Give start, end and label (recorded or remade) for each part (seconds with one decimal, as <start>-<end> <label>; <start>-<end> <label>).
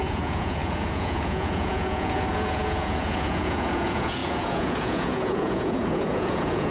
0.0-6.7 remade